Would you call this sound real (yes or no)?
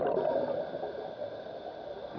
yes